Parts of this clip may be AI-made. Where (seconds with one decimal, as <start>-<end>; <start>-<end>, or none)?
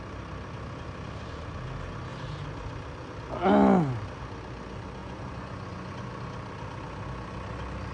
5.0-6.1